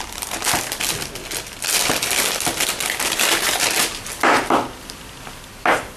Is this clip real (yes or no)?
yes